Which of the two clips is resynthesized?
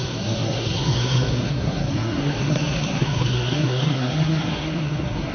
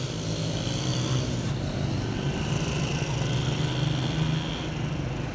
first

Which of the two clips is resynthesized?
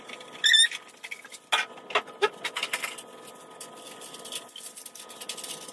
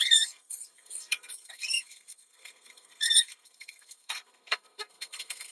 second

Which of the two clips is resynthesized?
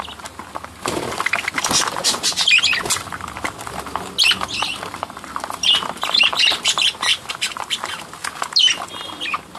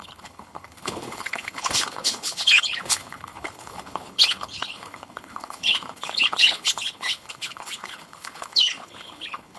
second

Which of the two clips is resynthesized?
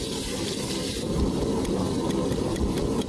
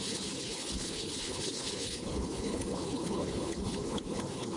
second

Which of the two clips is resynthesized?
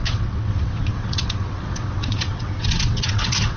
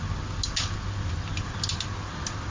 first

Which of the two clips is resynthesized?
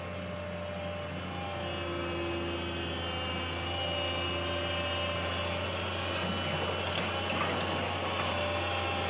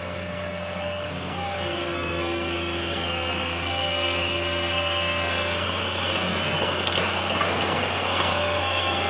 second